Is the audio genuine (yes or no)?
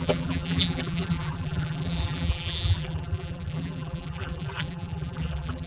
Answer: no